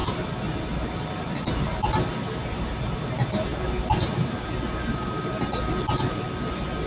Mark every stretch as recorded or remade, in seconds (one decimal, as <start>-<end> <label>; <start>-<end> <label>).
0.0-6.9 recorded